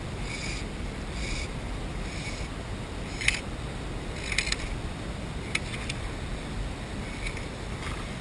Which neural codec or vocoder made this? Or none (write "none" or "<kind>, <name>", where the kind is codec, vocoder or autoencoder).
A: none